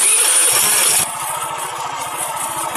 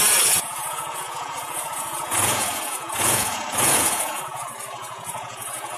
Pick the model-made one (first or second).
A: second